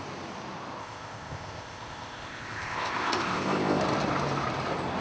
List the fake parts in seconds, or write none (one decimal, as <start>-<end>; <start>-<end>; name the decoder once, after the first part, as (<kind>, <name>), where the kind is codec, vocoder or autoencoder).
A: 0.8-3.8 (codec, ZipCodec)